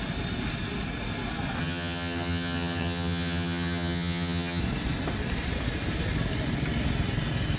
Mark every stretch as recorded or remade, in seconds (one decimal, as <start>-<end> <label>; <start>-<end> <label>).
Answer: 0.0-1.6 recorded; 1.6-4.6 remade; 4.6-7.6 recorded

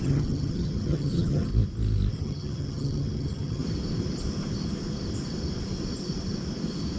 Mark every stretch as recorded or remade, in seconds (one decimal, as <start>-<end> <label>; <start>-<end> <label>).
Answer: 0.0-1.5 remade; 1.5-2.1 recorded; 2.1-3.6 remade; 3.6-7.0 recorded

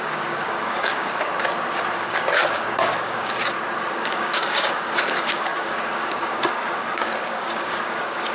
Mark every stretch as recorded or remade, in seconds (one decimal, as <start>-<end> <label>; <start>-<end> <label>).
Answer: 0.0-1.3 remade; 1.3-2.0 recorded; 2.0-3.4 remade; 3.4-3.9 recorded; 3.9-8.3 remade

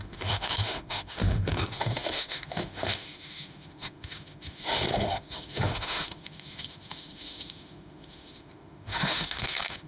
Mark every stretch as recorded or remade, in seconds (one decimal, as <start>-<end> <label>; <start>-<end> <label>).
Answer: 0.0-9.9 remade